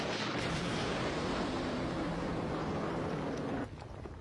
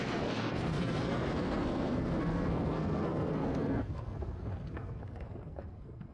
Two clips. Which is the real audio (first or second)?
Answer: first